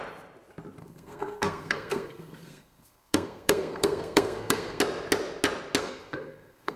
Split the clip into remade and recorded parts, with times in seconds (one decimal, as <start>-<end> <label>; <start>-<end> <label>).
0.0-0.8 recorded; 0.8-4.8 remade; 4.8-5.8 recorded; 5.8-6.8 remade